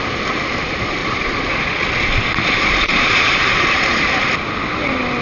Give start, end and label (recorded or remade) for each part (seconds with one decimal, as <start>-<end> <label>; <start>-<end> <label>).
0.0-1.0 recorded; 1.0-2.0 remade; 2.0-2.4 recorded; 2.4-4.0 remade; 4.0-5.2 recorded